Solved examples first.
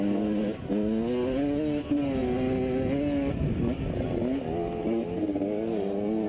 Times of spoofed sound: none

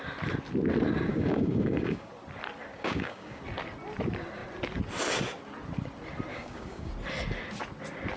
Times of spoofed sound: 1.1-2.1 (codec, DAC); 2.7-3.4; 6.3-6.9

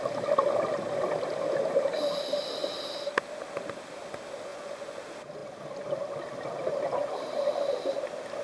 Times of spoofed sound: 4.5-5.0 (vocoder, Vocos)

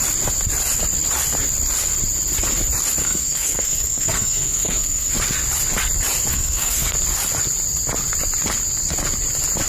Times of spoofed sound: 3.0-5.1 (codec, SNAC); 6.3-6.9